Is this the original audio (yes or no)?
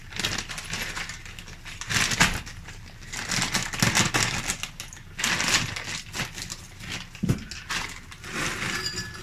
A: yes